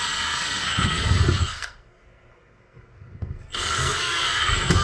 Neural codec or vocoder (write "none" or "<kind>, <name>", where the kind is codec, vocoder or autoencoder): codec, SNAC